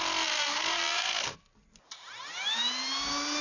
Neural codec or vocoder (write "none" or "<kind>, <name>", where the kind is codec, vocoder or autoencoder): none